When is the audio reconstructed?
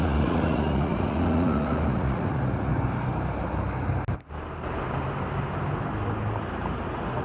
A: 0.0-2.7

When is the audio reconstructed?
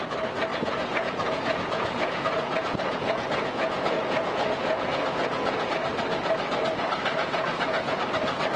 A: 0.5-5.7; 7.2-8.0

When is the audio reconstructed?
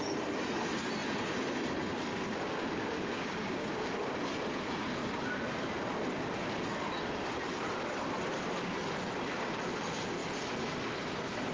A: 2.1-3.9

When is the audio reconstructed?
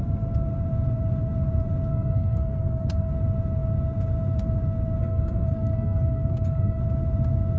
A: 1.9-3.1; 5.0-6.8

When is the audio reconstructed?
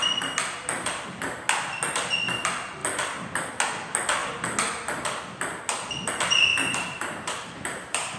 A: 6.5-8.2